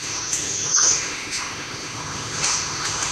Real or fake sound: fake